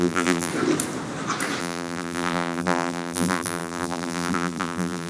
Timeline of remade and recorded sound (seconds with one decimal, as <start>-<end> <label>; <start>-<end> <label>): 0.0-0.5 remade; 0.5-1.6 recorded; 1.6-5.1 remade